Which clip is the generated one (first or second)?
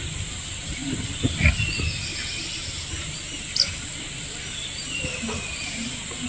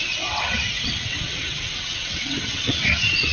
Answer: second